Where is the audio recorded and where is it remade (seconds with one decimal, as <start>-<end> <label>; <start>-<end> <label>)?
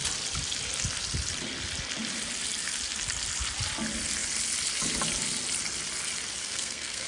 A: 0.0-6.4 recorded; 6.4-7.1 remade